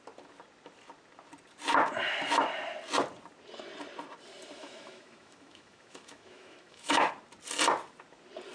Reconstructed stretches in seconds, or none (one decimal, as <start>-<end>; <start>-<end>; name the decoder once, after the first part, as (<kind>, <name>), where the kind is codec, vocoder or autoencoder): 4.6-7.1 (autoencoder, DAC-VAE)